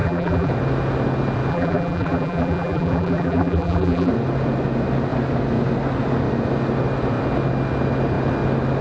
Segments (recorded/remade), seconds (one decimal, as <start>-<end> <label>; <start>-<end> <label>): 0.0-0.5 remade; 0.5-1.5 recorded; 1.5-4.1 remade; 4.1-8.8 recorded